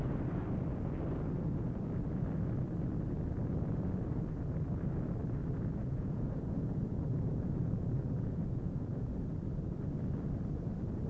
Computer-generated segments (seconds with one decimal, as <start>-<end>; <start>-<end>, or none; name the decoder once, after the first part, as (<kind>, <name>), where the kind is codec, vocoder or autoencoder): 5.8-9.1 (vocoder, Vocos)

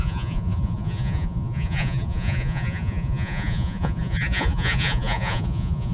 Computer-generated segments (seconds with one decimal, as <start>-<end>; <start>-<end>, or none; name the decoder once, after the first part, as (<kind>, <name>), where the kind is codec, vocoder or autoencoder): 0.0-5.9 (vocoder, Vocos)

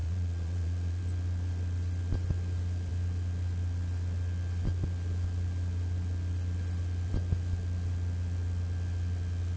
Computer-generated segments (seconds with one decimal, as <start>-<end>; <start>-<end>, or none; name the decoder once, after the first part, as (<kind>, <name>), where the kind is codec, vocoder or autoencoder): 0.0-1.0 (vocoder, Vocos)

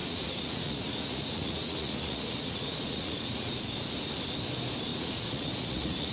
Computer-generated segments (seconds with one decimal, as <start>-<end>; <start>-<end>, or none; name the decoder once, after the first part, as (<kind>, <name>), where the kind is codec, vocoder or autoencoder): 0.0-3.7 (vocoder, Vocos); 4.9-6.1

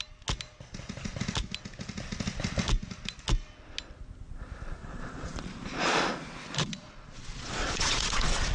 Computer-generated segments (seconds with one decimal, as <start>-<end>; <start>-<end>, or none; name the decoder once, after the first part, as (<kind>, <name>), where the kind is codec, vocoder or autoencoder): 4.8-6.1 (vocoder, Vocos); 6.6-8.5

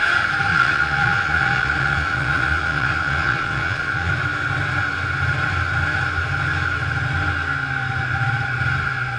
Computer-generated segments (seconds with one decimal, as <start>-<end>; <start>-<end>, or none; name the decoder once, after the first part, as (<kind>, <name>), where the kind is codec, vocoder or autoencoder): 0.5-4.1 (vocoder, Vocos)